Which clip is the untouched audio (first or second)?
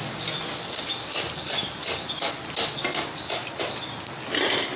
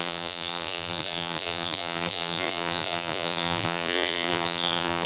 first